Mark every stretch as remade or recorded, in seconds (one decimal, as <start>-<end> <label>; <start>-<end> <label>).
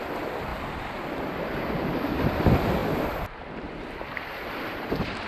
0.0-5.3 recorded